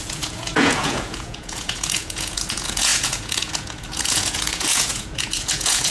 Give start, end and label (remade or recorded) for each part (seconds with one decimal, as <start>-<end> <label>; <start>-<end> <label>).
0.0-5.9 remade